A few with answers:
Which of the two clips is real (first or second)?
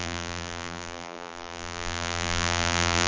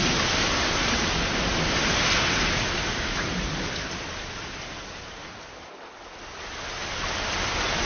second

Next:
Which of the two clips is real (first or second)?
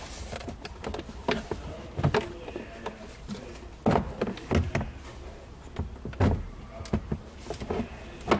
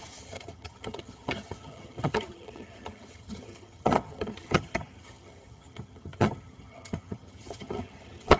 first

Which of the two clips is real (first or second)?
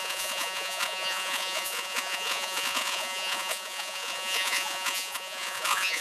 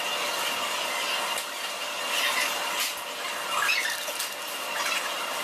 second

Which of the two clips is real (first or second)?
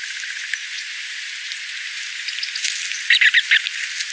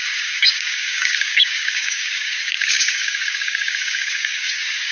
first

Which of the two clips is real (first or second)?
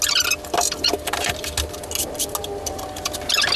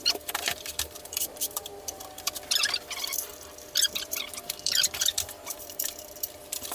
first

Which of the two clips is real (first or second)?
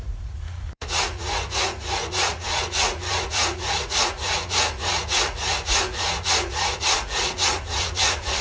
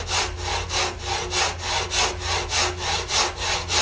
second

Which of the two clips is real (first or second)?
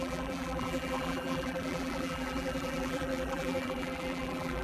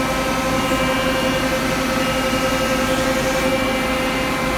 second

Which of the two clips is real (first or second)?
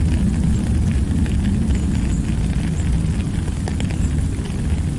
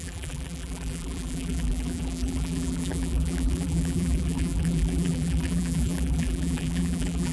first